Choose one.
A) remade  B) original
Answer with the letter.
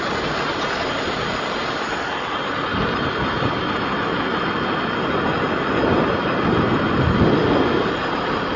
B